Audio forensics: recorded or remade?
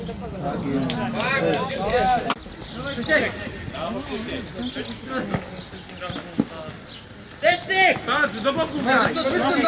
recorded